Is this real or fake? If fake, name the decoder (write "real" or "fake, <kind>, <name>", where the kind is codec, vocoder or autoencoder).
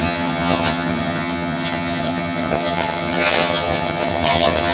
fake, vocoder, HiFi-GAN